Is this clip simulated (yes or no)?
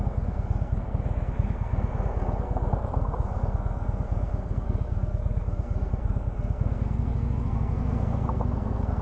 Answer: yes